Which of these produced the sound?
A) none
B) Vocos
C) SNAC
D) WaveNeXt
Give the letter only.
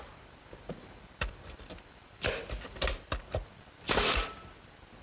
A